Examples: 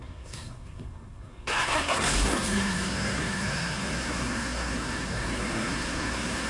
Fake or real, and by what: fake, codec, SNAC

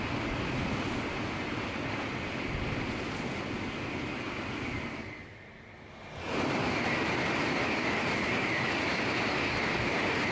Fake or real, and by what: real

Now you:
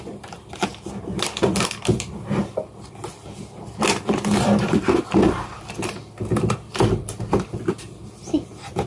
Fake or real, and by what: fake, vocoder, BigVGAN v2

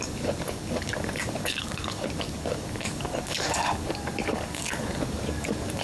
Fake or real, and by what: fake, codec, DAC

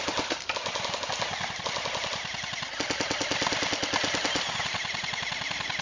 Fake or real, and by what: real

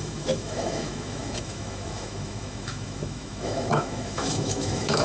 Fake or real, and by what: fake, autoencoder, DAC-VAE